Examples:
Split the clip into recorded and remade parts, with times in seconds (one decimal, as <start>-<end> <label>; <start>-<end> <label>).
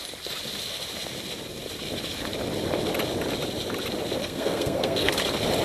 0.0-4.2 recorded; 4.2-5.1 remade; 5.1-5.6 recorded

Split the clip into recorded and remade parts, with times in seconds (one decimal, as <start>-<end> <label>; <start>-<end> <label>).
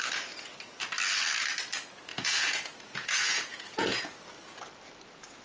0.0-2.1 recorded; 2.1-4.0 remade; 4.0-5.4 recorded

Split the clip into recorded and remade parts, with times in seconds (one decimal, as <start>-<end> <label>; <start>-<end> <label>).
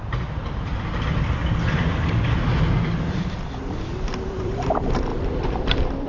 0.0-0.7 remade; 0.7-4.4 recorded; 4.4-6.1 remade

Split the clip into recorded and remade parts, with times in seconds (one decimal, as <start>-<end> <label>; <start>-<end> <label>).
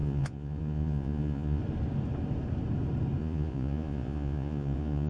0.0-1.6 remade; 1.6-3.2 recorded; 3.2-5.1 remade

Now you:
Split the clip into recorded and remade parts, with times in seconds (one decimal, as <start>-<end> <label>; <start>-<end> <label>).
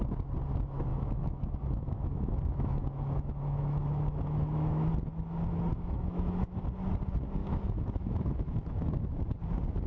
0.0-0.9 recorded; 0.9-4.9 remade; 4.9-5.7 recorded; 5.7-6.6 remade; 6.6-7.4 recorded; 7.4-9.2 remade; 9.2-9.9 recorded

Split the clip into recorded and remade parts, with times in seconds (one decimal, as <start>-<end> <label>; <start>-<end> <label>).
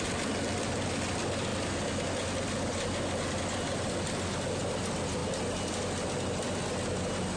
0.0-7.4 recorded